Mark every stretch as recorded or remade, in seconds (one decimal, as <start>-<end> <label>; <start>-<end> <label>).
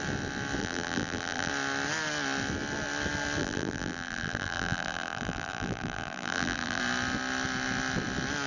0.0-0.6 recorded; 0.6-1.5 remade; 1.5-3.4 recorded; 3.4-6.8 remade; 6.8-8.5 recorded